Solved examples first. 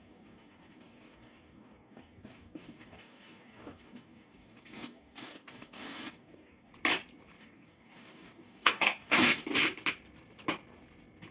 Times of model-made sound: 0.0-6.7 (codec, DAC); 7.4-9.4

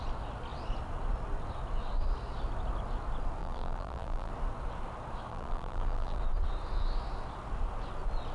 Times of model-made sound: 3.4-4.3 (vocoder, BigVGAN v2); 5.3-6.2

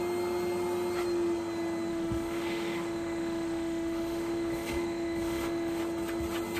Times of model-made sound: 1.9-5.8 (autoencoder, DAC-VAE)

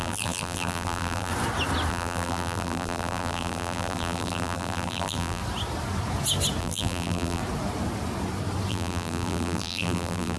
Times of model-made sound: 0.0-1.3 (vocoder, BigVGAN v2); 1.9-5.4; 6.6-7.4; 8.7-10.4

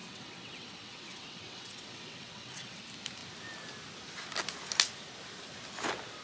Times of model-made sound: 0.0-2.8 (vocoder, WaveNeXt)

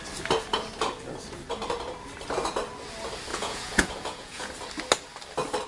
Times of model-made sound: 3.3-4.5 (vocoder, Vocos)

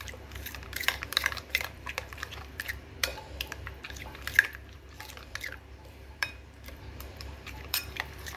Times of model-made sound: 0.0-3.1 (vocoder, BigVGAN v2); 6.1-8.4